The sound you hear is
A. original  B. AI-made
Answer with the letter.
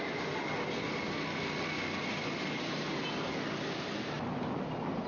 A